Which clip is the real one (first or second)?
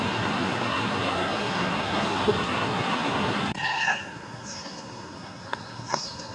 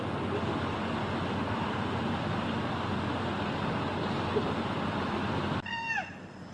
second